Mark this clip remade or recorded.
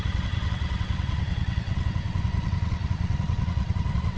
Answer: remade